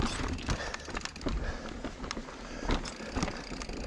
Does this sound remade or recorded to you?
recorded